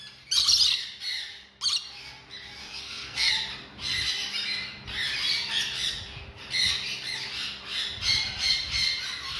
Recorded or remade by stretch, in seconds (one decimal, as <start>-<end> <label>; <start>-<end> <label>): 0.0-2.6 recorded; 2.6-3.3 remade; 3.3-9.4 recorded